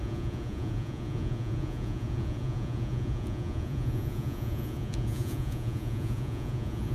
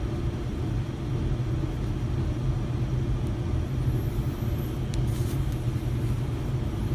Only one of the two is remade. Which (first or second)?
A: first